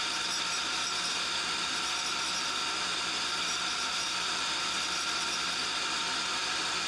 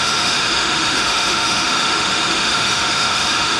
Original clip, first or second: first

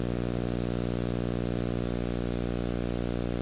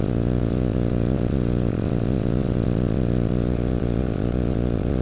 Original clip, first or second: first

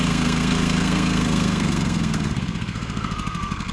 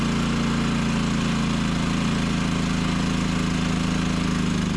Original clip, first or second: second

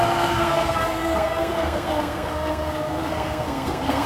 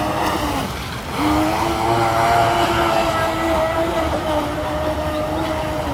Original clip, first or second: second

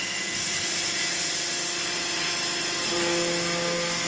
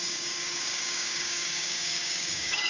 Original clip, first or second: first